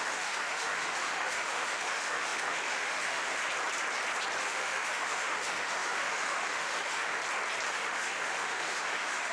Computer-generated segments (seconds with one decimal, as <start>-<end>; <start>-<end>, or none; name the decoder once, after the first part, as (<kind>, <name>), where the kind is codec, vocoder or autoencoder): 0.0-3.4 (autoencoder, DAC-VAE); 4.4-7.2; 7.7-9.3